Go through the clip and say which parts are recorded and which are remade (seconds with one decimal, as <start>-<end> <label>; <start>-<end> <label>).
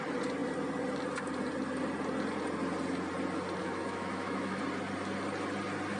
0.0-3.6 recorded; 3.6-4.6 remade; 4.6-6.0 recorded